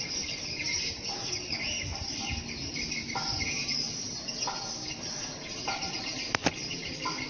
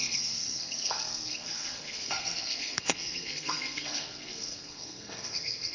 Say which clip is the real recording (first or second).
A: first